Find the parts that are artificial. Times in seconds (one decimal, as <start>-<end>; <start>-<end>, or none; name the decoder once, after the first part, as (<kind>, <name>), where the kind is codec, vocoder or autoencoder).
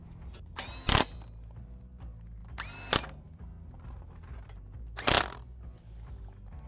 none